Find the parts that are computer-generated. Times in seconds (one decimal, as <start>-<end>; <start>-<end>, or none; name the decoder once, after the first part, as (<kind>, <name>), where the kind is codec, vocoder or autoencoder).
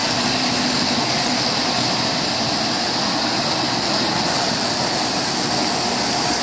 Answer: none